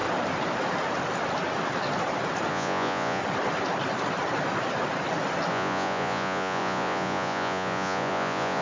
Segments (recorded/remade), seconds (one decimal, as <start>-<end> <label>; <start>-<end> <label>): 0.0-2.5 recorded; 2.5-3.2 remade; 3.2-5.5 recorded; 5.5-8.6 remade